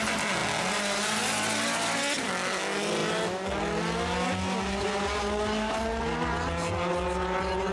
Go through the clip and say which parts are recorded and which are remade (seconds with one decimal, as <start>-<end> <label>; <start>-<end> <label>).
0.0-7.7 recorded